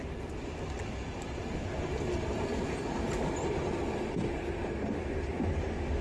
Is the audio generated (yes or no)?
no